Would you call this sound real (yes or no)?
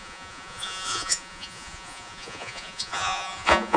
no